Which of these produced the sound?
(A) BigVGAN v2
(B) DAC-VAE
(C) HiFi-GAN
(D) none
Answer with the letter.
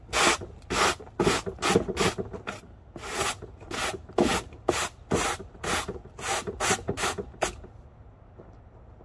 D